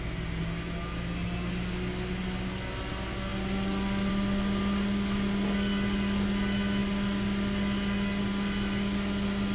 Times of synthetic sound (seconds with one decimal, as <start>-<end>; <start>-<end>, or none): none